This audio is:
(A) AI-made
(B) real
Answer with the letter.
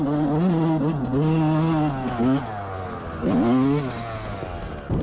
B